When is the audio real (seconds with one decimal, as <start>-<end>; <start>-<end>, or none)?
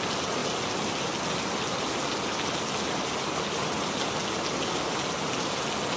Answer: 0.0-6.0